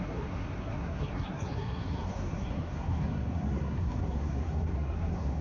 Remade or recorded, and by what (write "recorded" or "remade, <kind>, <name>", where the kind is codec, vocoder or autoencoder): remade, codec, SNAC